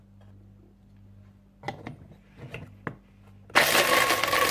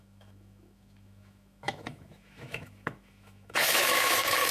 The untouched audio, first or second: first